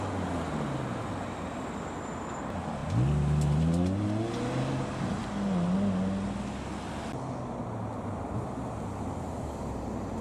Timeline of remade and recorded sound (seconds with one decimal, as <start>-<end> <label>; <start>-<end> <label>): 0.0-10.2 recorded